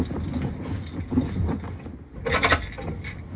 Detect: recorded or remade recorded